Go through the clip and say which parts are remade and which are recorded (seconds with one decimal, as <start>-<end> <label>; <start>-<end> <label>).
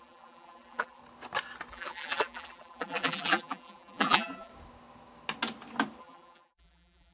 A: 0.0-1.0 remade; 1.0-1.7 recorded; 1.7-4.5 remade; 4.5-6.0 recorded; 6.0-7.1 remade